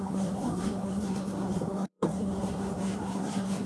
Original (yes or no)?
no